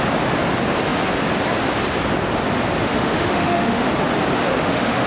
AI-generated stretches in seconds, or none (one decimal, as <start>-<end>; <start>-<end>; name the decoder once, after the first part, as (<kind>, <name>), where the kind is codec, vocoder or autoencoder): 2.8-3.9 (autoencoder, DAC-VAE); 4.5-5.1